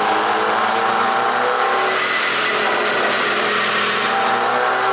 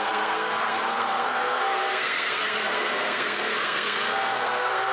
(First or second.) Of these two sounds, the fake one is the second